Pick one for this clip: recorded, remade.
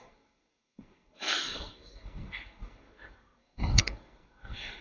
remade